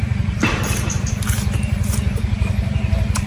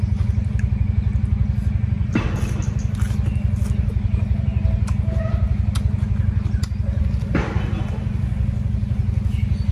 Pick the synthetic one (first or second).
first